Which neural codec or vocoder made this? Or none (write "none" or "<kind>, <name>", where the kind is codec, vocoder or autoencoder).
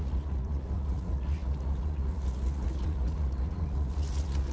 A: vocoder, Vocos